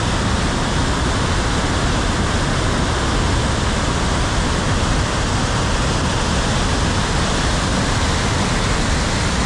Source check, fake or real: real